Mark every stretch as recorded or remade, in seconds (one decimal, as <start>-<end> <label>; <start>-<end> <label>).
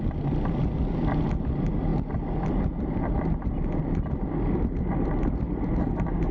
0.0-6.3 recorded